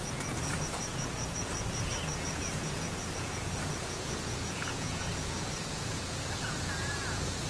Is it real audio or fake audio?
fake